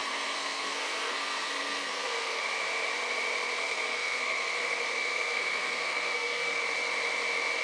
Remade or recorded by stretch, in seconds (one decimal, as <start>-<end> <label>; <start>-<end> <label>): 0.0-2.4 remade; 2.4-3.6 recorded; 3.6-6.6 remade; 6.6-7.6 recorded